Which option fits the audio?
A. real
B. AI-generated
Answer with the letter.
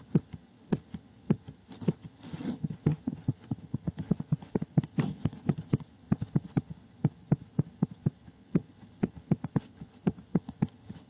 B